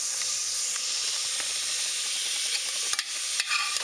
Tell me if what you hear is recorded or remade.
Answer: recorded